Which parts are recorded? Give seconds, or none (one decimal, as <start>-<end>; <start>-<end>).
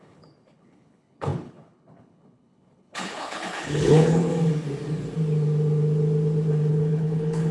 4.3-6.7